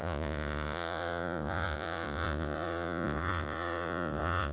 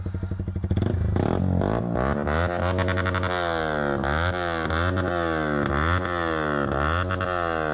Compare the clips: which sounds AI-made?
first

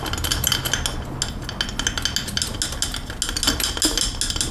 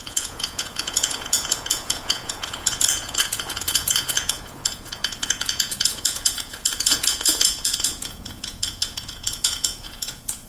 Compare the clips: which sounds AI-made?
second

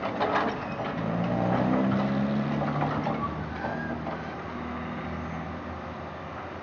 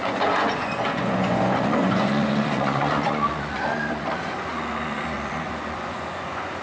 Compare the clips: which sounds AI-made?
second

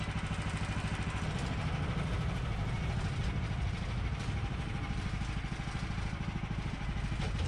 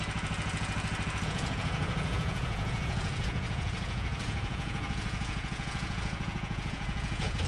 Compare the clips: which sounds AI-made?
second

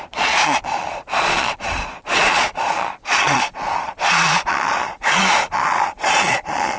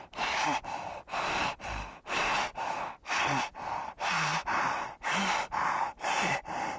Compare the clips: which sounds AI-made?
first